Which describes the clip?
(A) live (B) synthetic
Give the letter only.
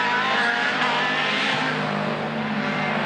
A